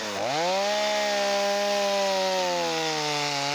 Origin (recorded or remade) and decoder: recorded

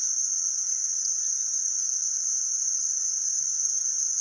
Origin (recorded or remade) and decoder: remade, vocoder, BigVGAN v2